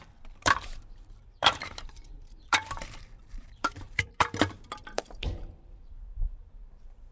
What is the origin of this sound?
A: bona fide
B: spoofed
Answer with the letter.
B